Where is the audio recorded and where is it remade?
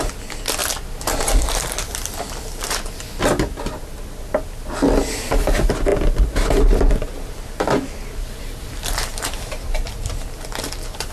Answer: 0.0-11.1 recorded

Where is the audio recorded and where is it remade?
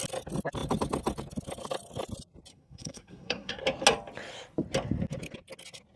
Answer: 0.0-2.5 recorded; 2.5-3.6 remade; 3.6-6.0 recorded